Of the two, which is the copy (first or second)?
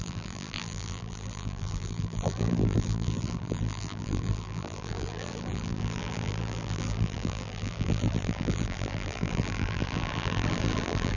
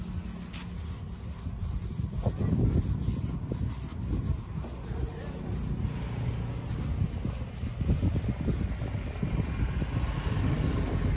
first